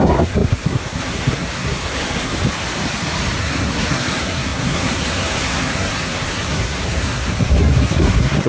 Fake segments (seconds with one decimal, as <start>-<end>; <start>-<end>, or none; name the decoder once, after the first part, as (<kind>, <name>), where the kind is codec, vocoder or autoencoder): 0.0-2.3 (codec, SNAC); 3.4-8.5